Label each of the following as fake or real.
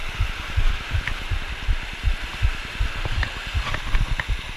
real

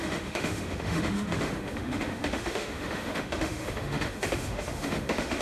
fake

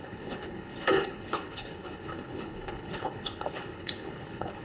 fake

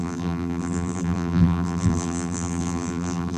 fake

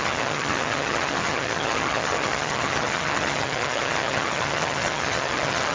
fake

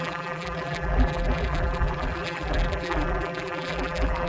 fake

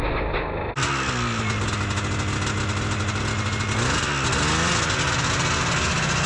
real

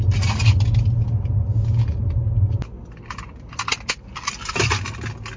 real